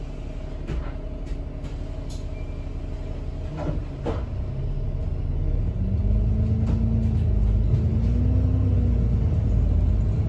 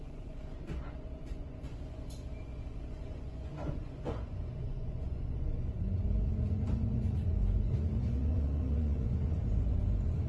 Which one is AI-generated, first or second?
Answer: second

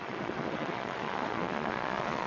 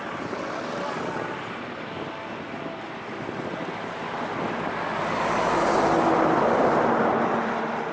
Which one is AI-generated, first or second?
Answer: first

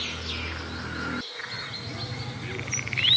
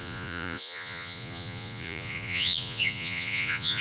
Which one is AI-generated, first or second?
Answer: second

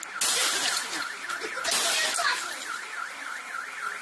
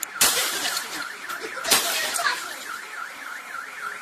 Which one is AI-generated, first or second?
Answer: second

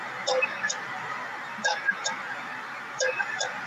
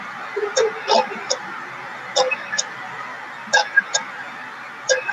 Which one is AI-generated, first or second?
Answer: first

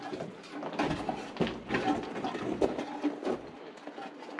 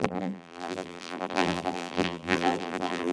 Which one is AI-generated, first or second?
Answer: second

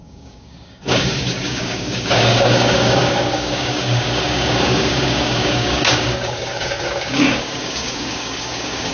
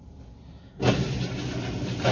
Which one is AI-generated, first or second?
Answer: first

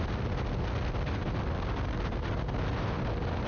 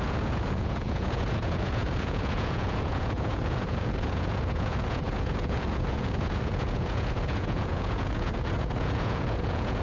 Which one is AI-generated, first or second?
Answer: second